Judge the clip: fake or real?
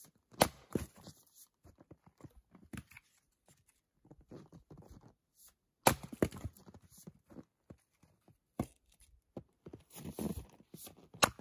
real